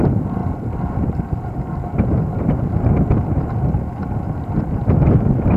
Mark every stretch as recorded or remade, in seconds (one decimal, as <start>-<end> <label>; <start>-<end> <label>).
0.0-0.4 remade; 0.4-3.5 recorded; 3.5-5.6 remade